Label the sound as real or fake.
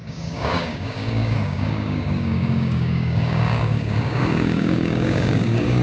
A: fake